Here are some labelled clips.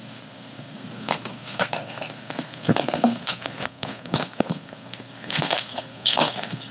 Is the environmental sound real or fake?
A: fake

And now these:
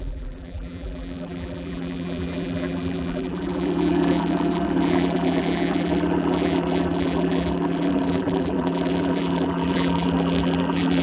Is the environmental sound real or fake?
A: fake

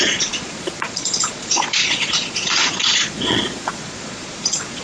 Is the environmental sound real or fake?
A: fake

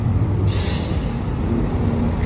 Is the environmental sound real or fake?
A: real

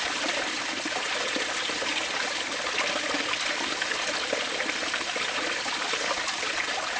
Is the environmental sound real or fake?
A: real